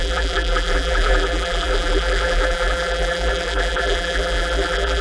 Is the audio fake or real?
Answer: fake